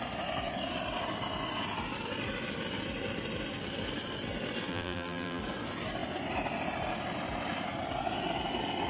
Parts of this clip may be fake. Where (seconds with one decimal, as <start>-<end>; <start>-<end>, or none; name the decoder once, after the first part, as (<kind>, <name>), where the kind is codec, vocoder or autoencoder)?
4.7-5.4 (vocoder, BigVGAN v2)

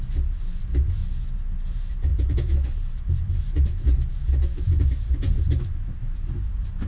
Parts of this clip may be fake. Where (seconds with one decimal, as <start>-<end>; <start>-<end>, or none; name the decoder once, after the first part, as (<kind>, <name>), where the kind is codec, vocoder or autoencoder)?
0.0-1.0 (vocoder, BigVGAN v2); 1.7-6.9

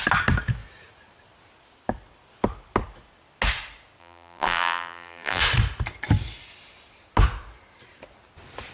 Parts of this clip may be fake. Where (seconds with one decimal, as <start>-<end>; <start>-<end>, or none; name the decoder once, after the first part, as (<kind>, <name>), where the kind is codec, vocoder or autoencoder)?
4.0-5.4 (vocoder, BigVGAN v2)